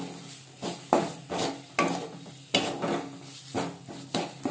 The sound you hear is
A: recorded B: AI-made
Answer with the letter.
A